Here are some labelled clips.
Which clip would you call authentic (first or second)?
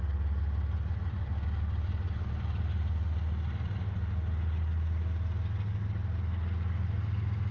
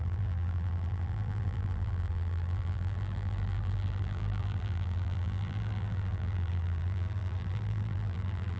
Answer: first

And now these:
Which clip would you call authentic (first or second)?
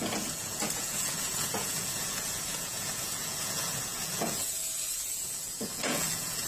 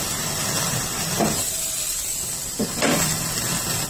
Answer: second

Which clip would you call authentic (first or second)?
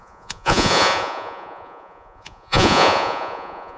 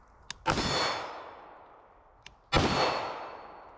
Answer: second